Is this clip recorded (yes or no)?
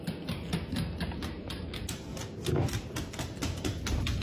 yes